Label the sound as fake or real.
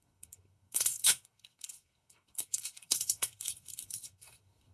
fake